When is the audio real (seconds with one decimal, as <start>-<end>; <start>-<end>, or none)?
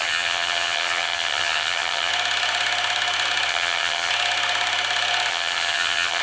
2.1-3.5; 4.1-5.3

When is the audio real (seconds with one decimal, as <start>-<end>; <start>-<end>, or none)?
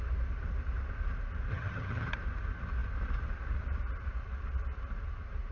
0.0-1.5; 2.1-5.5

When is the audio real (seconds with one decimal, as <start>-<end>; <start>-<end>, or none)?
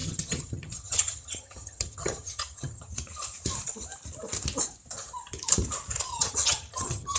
2.9-6.1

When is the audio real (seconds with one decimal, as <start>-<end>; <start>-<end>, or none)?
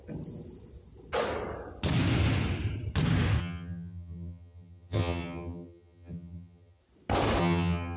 0.0-3.4; 6.8-7.4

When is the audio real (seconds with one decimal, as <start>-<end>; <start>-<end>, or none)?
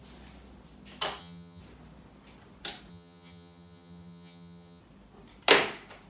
0.0-1.2; 1.6-2.9; 4.8-6.1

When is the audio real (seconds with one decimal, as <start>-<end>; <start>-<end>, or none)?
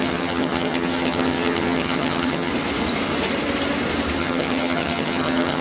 2.5-4.2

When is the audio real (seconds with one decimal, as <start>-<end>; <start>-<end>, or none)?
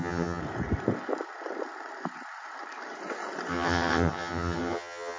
0.4-3.5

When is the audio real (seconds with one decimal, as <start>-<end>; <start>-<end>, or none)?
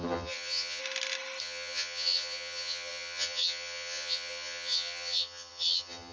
0.8-1.4